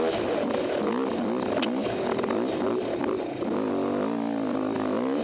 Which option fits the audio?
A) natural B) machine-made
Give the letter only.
A